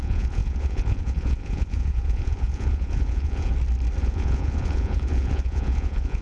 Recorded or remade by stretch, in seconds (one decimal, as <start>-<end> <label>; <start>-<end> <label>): 0.0-3.5 remade; 3.5-4.0 recorded; 4.0-6.2 remade

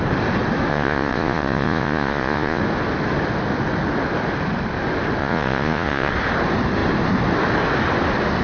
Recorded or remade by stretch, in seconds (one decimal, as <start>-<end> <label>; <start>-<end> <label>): 0.0-0.7 recorded; 0.7-2.6 remade; 2.6-5.2 recorded; 5.2-6.1 remade; 6.1-8.4 recorded

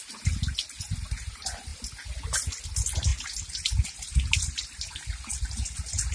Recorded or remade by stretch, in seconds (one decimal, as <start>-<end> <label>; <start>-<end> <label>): 0.0-6.1 recorded

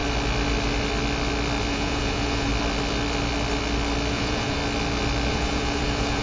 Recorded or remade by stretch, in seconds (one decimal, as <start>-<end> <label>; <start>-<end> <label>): 0.0-1.7 recorded; 1.7-2.5 remade; 2.5-4.1 recorded; 4.1-4.6 remade; 4.6-5.3 recorded; 5.3-6.2 remade

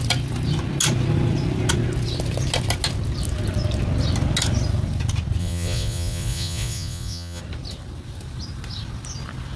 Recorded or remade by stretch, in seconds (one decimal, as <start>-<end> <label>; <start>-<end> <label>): 0.0-5.4 recorded; 5.4-7.4 remade; 7.4-9.6 recorded

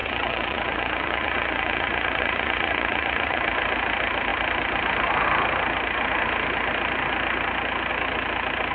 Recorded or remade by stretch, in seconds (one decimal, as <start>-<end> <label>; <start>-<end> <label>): 0.0-3.4 remade; 3.4-8.7 recorded